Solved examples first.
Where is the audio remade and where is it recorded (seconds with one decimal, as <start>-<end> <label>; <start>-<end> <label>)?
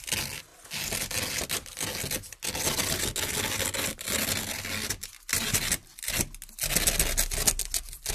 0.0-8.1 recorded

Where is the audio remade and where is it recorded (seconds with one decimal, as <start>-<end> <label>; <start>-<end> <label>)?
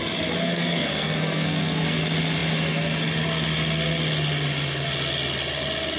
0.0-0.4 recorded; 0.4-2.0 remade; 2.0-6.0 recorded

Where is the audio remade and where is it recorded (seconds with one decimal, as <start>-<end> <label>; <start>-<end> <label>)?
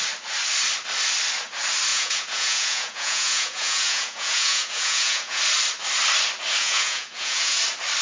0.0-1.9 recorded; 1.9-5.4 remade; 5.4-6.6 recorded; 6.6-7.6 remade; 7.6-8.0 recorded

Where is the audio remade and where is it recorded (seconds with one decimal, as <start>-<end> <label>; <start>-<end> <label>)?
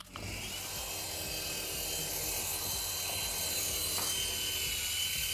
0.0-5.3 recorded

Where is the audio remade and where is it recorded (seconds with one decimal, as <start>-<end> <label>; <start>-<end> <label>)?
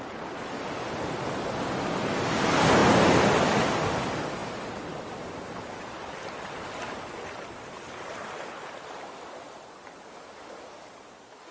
0.0-11.5 recorded